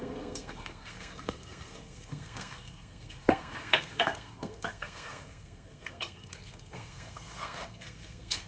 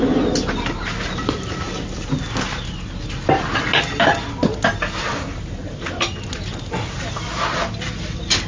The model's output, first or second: first